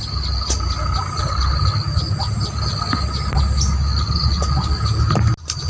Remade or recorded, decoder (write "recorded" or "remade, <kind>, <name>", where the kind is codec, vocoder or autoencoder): recorded